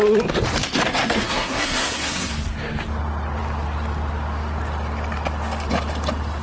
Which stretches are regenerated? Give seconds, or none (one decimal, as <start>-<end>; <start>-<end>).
0.9-2.3